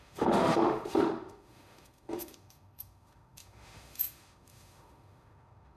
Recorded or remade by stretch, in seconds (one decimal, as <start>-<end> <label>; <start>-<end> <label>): 0.0-5.8 remade